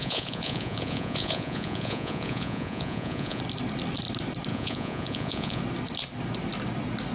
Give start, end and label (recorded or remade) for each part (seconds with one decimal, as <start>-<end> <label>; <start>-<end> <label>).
0.0-3.4 remade; 3.4-4.5 recorded; 4.5-5.6 remade; 5.6-7.1 recorded